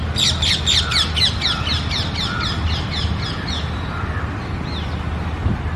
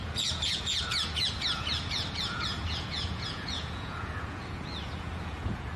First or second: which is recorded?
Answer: first